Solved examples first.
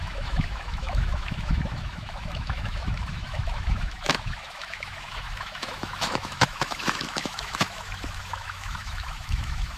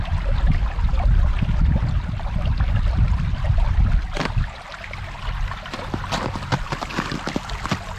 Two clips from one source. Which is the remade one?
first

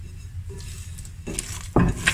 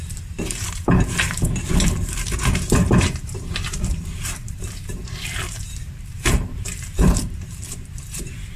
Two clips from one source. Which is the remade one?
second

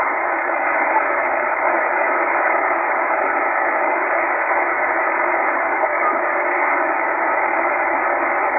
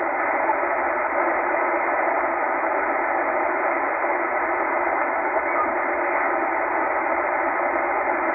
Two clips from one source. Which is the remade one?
first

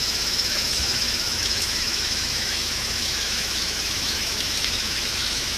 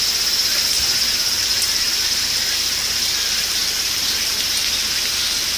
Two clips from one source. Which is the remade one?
first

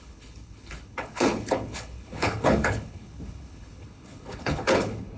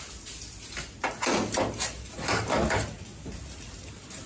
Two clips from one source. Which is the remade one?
first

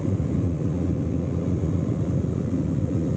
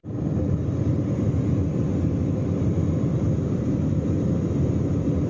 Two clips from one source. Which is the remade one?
first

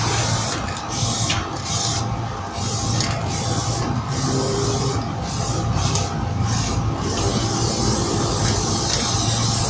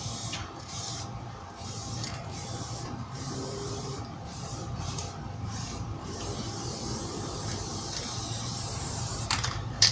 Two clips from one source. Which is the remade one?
second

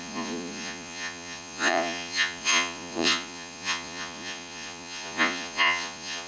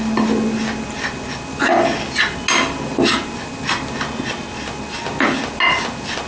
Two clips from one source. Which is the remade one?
first